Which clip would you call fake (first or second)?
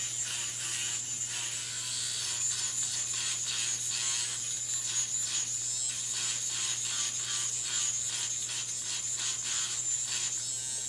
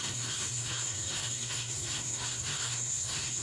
second